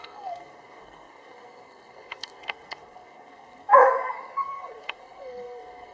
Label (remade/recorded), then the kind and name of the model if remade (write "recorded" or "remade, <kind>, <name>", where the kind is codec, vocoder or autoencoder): remade, codec, SNAC